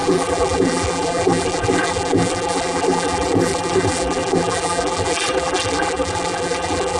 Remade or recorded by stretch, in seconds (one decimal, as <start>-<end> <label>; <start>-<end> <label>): 0.0-7.0 remade